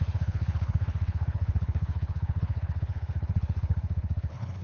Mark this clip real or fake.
fake